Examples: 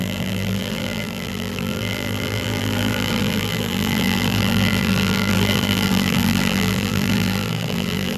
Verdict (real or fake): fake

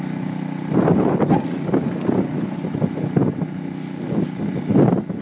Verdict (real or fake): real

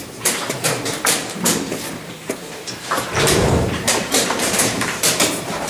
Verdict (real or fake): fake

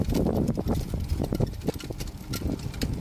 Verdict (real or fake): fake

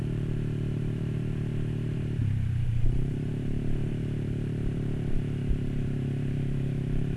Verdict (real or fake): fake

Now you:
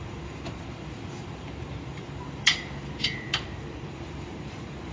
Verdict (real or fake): fake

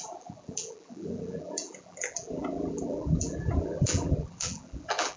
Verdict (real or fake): fake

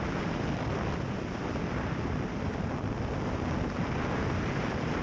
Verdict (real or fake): real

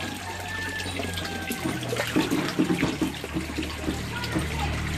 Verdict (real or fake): real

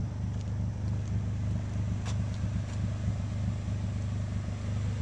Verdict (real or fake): real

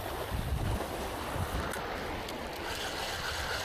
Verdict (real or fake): real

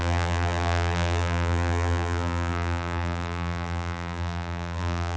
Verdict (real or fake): fake